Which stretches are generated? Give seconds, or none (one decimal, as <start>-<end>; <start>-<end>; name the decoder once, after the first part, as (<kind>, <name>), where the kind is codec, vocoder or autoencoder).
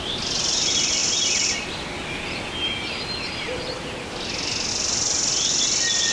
none